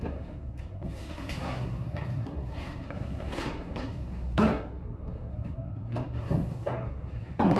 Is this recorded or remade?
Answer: remade